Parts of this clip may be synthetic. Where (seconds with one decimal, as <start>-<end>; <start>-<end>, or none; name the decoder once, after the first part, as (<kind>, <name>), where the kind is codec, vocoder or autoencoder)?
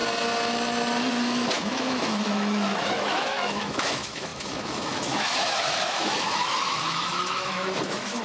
1.1-8.2 (autoencoder, DAC-VAE)